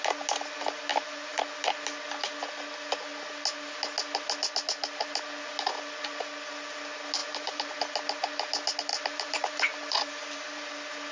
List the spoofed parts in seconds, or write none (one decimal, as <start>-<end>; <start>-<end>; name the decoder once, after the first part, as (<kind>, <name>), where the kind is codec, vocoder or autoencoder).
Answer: 0.9-1.4 (vocoder, BigVGAN v2); 7.2-7.7; 8.9-10.7